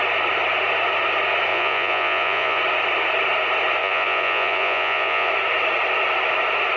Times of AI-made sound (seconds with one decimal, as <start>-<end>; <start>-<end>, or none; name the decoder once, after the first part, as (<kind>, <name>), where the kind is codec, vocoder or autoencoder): 1.5-2.6 (vocoder, Vocos); 3.8-5.3